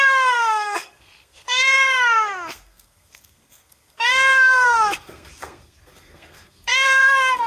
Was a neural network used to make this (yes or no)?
yes